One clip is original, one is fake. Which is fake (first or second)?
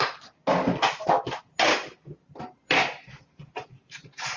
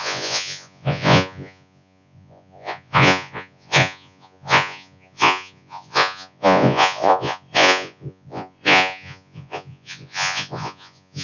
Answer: second